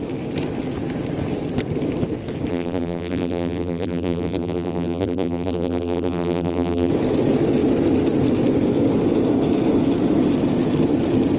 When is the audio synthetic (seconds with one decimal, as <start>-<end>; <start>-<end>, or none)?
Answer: 2.5-6.9